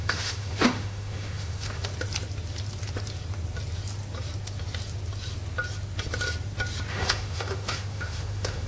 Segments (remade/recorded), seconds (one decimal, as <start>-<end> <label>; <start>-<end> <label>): 0.0-1.9 remade; 1.9-6.9 recorded; 6.9-8.7 remade